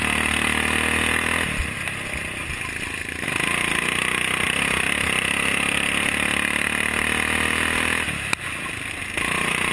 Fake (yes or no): no